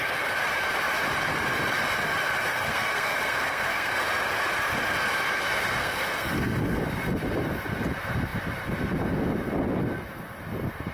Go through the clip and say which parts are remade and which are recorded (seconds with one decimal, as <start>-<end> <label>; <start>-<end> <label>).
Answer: 0.0-2.5 recorded; 2.5-3.9 remade; 3.9-5.8 recorded; 5.8-6.8 remade; 6.8-10.9 recorded